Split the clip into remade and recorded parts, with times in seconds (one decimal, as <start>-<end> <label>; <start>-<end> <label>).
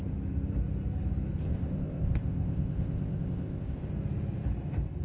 0.0-1.4 recorded; 1.4-3.9 remade; 3.9-5.0 recorded